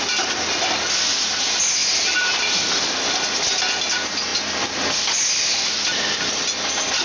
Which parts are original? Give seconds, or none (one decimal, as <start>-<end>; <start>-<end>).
0.0-7.0